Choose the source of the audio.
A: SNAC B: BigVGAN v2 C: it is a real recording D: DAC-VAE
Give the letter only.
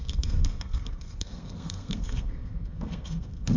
A